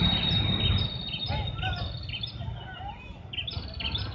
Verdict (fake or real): real